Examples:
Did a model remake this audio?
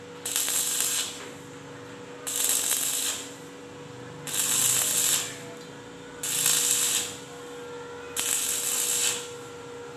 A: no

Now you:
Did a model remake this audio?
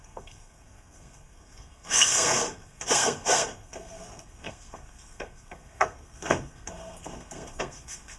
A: yes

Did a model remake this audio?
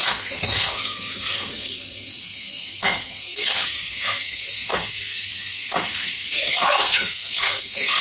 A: yes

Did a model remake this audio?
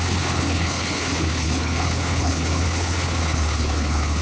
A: yes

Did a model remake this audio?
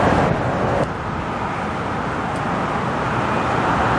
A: no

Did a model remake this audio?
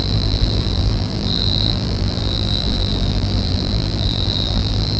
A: yes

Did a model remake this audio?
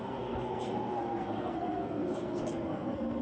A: yes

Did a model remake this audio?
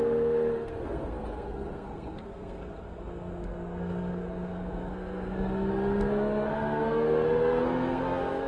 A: yes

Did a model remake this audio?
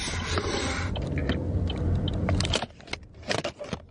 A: no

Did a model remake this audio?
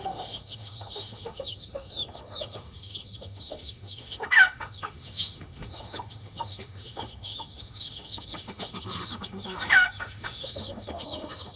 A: yes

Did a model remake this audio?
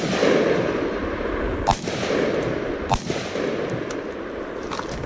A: no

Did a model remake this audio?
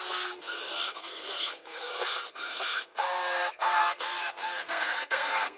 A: yes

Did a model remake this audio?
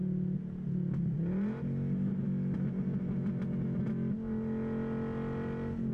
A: no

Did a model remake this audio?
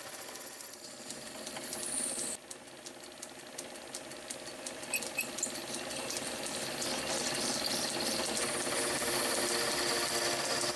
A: no